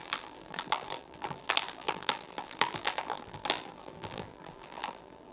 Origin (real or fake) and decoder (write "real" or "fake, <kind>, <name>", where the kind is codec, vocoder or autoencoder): fake, vocoder, BigVGAN v2